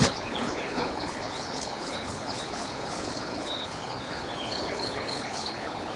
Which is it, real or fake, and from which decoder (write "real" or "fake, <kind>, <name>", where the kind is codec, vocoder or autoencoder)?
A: fake, codec, HILCodec